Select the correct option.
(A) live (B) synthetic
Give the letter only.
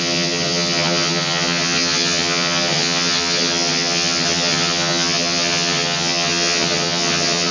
B